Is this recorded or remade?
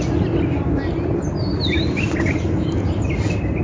recorded